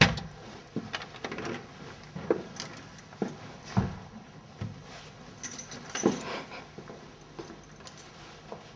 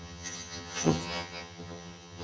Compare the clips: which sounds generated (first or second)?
second